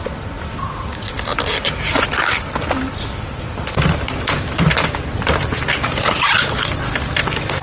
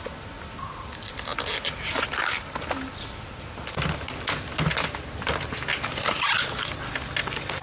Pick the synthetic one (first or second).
first